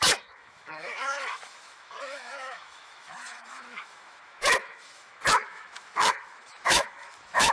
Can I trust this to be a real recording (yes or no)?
no